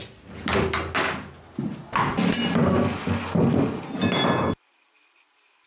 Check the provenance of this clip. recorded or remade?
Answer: recorded